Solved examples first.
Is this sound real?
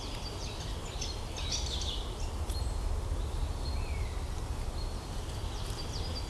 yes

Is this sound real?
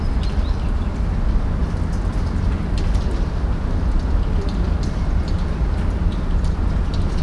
yes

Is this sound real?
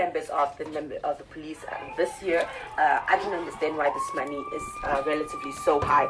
yes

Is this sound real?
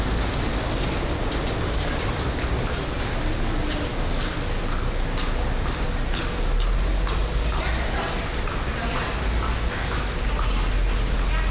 yes